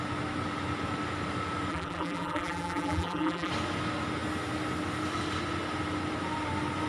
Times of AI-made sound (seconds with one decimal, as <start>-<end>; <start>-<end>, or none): 1.7-3.5